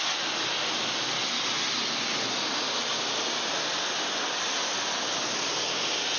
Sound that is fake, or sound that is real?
real